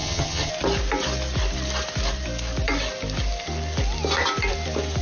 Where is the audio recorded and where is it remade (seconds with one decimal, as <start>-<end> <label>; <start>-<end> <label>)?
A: 0.0-0.5 remade; 0.5-5.0 recorded